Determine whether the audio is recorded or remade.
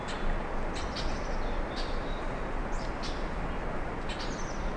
recorded